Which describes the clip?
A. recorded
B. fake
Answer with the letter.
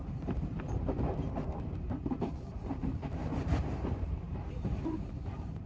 B